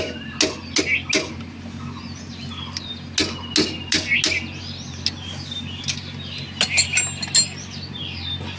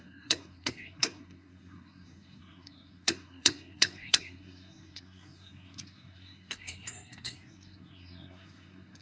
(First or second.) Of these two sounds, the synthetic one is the second